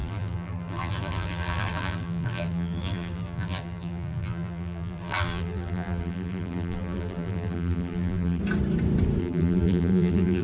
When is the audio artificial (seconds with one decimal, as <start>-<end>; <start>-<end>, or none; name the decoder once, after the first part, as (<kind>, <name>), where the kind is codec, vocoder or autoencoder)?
0.0-8.4 (vocoder, BigVGAN v2); 9.2-10.4